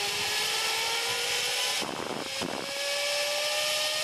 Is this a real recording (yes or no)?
yes